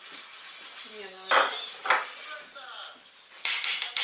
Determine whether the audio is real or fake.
real